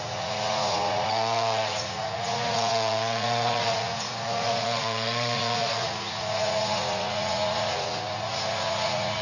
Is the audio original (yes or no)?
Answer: no